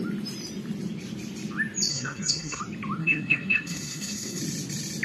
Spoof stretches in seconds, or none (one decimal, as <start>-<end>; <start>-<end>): 1.9-2.6; 3.0-4.4